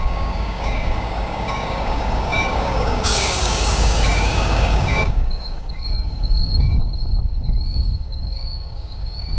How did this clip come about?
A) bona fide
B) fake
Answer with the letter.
B